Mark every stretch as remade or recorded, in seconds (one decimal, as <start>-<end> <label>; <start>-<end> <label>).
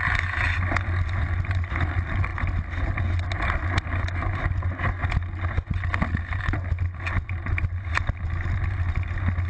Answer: 0.0-9.5 recorded